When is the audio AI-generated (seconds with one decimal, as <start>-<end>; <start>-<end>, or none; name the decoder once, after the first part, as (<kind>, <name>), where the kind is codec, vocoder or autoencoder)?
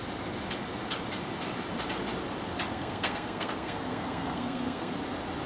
2.7-4.9 (codec, SNAC)